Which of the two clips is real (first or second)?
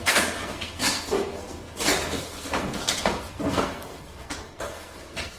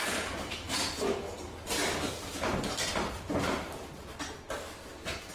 second